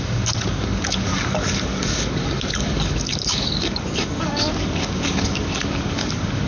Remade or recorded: remade